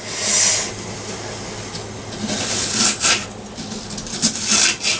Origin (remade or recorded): recorded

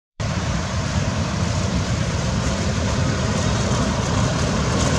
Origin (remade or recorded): remade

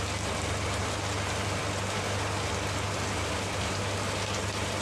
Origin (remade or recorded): recorded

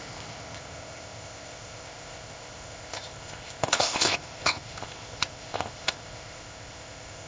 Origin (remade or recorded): remade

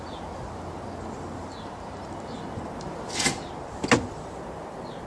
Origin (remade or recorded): recorded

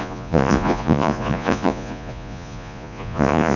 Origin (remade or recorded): remade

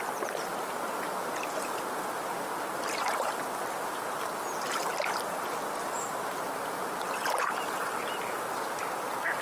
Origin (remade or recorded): recorded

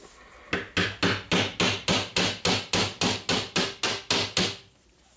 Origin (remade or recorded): recorded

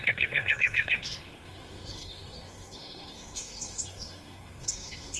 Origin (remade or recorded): remade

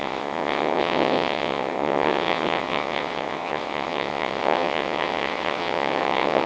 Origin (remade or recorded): remade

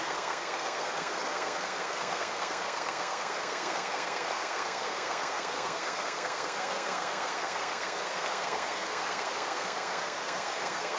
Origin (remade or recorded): remade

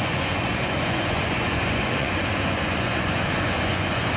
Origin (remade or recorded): remade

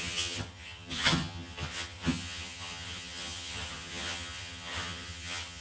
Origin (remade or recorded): remade